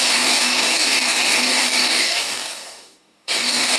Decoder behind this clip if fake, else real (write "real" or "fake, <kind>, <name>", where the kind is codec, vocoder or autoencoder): fake, codec, DAC